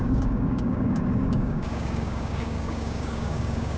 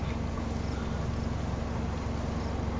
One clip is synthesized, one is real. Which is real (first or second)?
second